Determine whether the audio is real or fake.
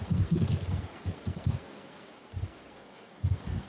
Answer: fake